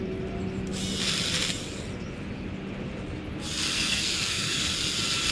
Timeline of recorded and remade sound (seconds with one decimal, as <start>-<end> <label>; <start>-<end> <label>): 0.0-3.7 recorded; 3.7-4.7 remade; 4.7-5.3 recorded